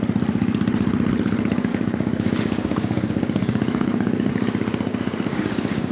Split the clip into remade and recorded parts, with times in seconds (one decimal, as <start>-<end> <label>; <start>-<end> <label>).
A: 0.0-1.7 recorded; 1.7-4.3 remade; 4.3-4.9 recorded; 4.9-5.9 remade